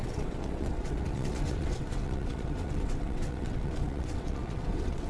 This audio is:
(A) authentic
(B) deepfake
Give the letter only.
B